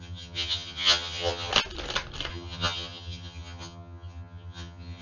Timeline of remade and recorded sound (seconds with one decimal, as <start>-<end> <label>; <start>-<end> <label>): 0.0-1.5 remade; 1.5-2.3 recorded; 2.3-5.0 remade